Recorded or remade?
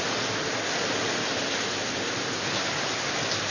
recorded